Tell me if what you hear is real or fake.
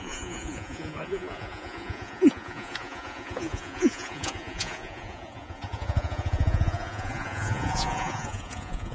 fake